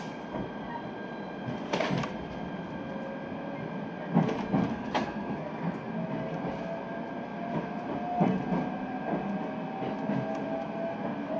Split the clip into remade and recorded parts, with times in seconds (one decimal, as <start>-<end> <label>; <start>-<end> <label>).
0.0-4.7 recorded; 4.7-5.9 remade; 5.9-11.4 recorded